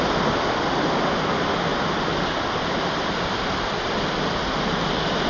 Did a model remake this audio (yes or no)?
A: no